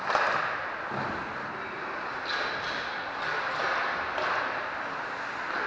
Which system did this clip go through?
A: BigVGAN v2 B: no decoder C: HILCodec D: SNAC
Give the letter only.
B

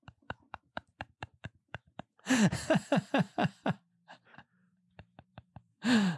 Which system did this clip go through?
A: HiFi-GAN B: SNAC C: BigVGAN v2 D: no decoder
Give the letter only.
C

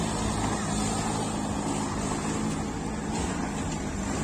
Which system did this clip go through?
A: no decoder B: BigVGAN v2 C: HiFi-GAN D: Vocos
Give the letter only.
A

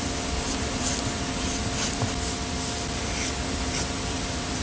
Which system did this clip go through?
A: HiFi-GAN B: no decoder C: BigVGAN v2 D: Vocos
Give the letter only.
B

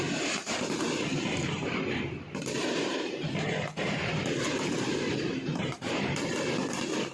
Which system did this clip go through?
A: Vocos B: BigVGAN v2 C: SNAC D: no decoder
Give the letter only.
B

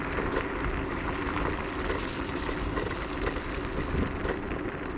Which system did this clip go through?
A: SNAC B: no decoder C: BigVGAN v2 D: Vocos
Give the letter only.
B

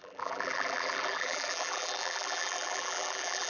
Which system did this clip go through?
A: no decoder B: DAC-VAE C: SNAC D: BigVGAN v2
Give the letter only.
D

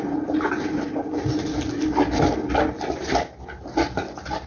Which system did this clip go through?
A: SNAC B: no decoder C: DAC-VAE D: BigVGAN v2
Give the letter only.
B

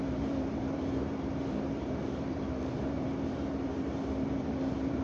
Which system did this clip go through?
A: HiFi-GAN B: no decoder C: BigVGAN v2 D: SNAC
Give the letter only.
C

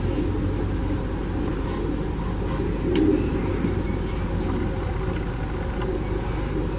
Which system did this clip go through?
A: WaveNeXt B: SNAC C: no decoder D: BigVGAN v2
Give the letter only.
C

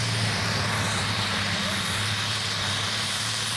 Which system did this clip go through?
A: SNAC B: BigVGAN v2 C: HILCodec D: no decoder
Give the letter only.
B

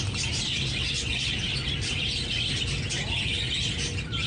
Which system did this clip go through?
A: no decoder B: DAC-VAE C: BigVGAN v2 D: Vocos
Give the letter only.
A